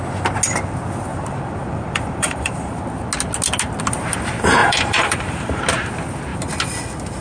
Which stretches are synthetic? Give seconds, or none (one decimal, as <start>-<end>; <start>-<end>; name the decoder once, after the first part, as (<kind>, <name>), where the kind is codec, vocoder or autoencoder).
1.1-2.8 (vocoder, BigVGAN v2); 4.6-5.6